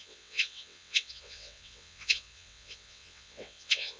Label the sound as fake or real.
fake